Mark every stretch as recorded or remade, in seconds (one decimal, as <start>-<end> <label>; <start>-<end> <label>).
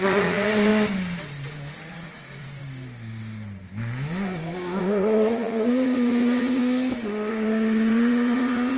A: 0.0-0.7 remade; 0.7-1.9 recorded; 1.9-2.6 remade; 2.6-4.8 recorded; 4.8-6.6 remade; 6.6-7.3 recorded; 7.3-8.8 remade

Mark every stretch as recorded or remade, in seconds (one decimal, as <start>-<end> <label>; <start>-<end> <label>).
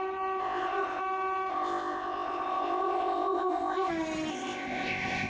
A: 0.0-0.4 recorded; 0.4-1.0 remade; 1.0-1.5 recorded; 1.5-3.9 remade; 3.9-4.3 recorded; 4.3-5.3 remade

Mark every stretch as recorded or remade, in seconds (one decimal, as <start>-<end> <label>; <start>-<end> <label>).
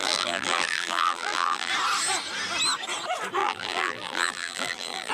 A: 0.0-1.7 remade; 1.7-3.4 recorded; 3.4-5.1 remade